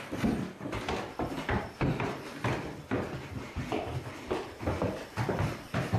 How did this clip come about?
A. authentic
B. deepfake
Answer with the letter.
B